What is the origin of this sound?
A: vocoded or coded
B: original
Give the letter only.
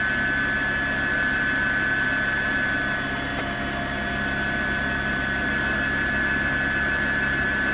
B